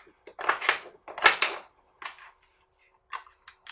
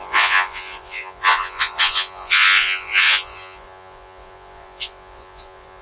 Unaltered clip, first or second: first